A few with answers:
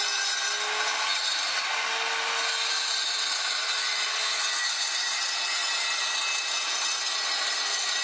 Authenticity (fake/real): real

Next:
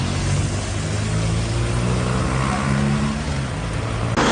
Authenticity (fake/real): real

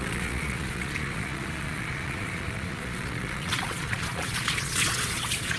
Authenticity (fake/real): fake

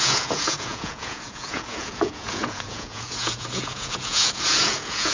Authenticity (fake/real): fake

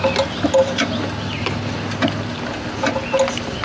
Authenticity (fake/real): real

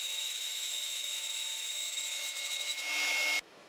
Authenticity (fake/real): fake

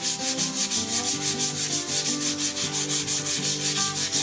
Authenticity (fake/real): real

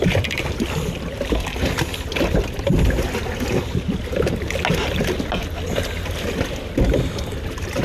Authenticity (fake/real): real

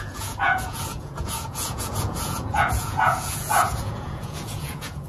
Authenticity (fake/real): fake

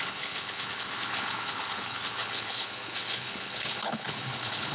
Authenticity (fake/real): fake